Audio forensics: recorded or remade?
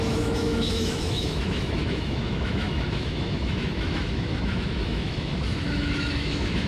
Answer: remade